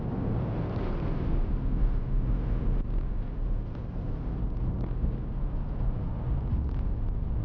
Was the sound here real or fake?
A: real